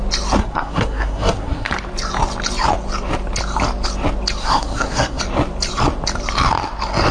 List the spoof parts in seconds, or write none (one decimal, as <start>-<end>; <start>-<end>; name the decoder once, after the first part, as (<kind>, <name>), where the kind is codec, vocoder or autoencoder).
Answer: 0.4-1.7 (codec, SNAC); 4.4-5.2